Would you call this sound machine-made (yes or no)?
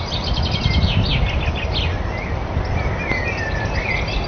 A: no